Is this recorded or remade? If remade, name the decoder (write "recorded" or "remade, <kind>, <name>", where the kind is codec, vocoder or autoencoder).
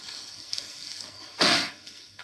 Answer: remade, codec, SNAC